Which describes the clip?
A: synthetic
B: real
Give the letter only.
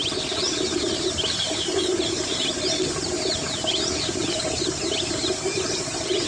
B